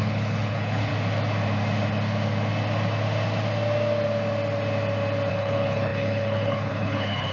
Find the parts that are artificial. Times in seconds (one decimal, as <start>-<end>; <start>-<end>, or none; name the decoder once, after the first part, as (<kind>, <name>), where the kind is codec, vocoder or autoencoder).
0.0-0.9 (codec, HILCodec); 5.3-7.3